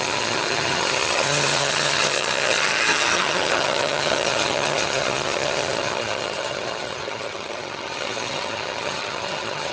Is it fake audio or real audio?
fake